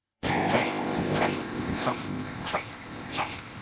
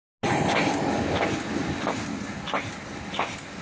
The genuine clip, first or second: second